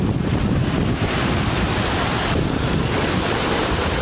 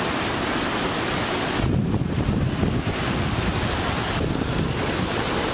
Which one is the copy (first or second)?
first